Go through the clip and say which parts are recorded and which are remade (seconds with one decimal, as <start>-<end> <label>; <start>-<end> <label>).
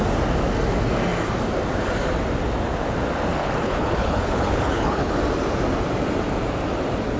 0.0-3.4 recorded; 3.4-5.1 remade; 5.1-7.2 recorded